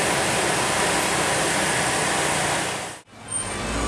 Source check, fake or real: real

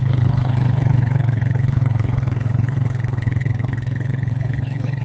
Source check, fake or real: fake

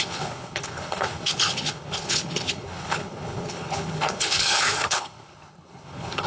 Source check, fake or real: fake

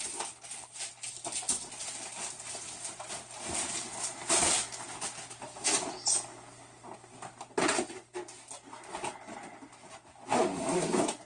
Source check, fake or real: real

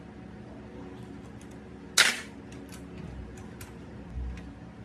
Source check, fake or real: real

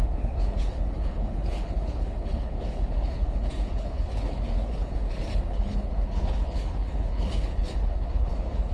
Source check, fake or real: fake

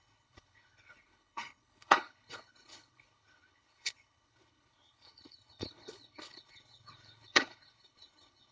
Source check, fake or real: fake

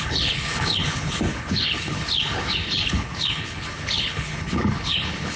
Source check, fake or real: fake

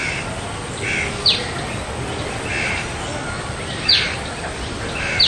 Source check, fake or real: real